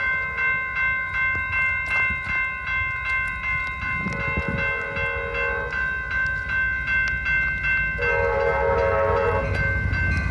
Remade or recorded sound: recorded